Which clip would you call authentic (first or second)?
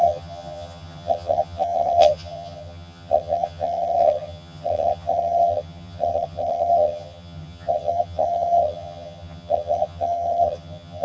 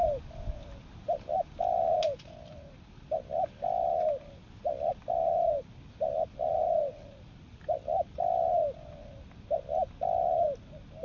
second